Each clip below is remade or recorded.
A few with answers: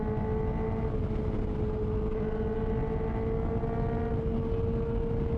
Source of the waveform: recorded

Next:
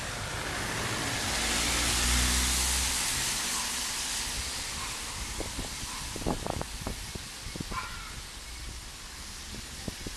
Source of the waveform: recorded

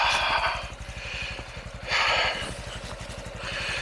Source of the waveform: recorded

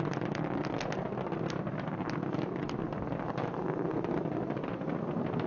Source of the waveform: recorded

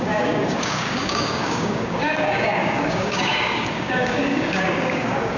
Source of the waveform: remade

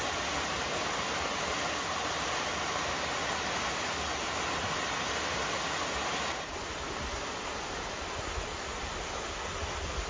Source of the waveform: recorded